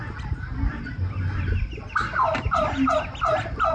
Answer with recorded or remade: recorded